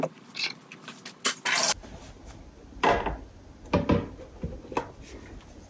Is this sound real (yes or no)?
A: yes